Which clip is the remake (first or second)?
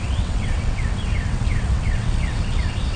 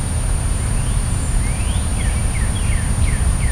first